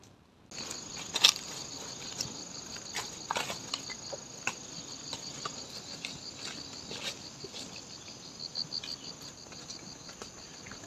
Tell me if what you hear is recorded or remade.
recorded